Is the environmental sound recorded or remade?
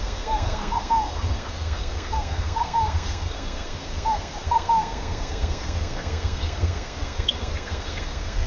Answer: remade